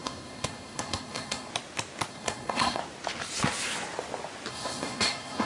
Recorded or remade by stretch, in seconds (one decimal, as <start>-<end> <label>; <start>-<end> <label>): 0.0-1.5 remade; 1.5-2.1 recorded; 2.1-2.8 remade; 2.8-4.5 recorded; 4.5-5.5 remade